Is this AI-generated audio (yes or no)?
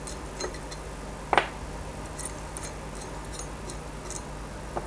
no